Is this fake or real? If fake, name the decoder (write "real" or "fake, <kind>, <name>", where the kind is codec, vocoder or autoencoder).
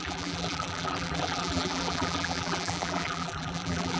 fake, vocoder, BigVGAN v2